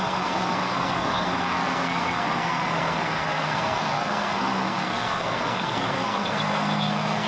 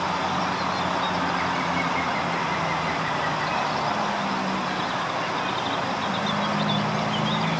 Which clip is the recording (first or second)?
second